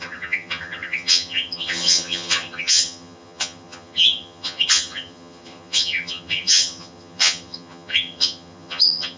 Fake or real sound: fake